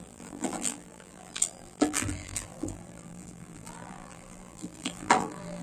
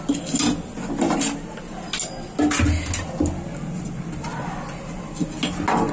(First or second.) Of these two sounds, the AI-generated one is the first